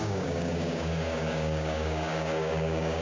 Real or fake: fake